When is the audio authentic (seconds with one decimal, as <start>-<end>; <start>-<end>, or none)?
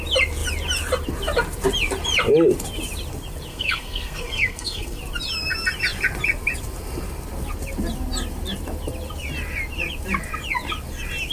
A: 0.0-3.5; 5.0-11.3